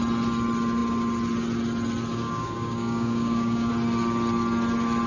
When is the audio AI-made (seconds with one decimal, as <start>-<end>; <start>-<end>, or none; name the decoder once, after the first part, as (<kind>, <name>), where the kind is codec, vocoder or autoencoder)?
2.1-3.7 (codec, DAC)